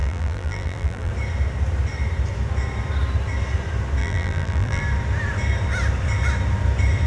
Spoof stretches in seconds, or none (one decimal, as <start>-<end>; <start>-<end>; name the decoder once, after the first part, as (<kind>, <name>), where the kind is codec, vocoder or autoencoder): 0.0-1.1 (vocoder, BigVGAN v2); 4.0-4.8